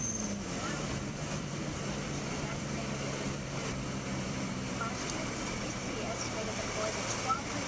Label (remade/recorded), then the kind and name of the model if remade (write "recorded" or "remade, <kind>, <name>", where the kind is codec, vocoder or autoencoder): remade, vocoder, BigVGAN v2